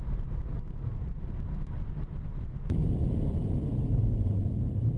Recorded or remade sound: remade